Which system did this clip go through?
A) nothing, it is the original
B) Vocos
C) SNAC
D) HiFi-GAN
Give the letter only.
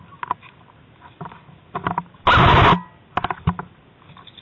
A